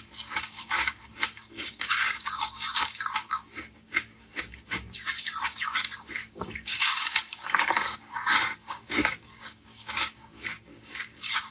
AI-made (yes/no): yes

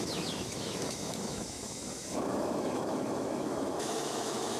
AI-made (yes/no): yes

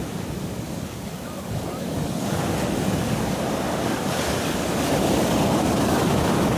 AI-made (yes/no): yes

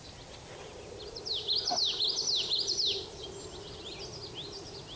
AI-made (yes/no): no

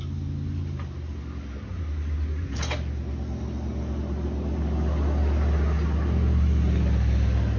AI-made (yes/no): no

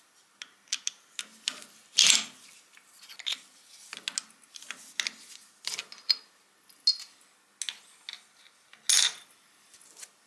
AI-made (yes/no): no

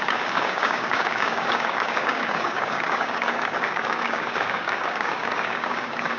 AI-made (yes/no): yes